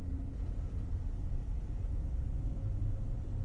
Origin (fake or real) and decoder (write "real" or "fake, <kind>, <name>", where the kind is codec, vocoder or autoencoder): fake, vocoder, BigVGAN v2